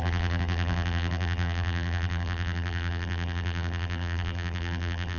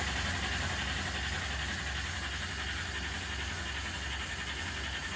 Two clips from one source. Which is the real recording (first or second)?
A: second